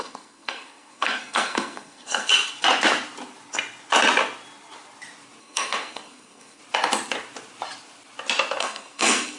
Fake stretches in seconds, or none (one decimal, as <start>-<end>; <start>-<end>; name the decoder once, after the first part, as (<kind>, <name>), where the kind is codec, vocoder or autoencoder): 0.0-2.3 (codec, SNAC); 5.4-6.6; 8.6-9.4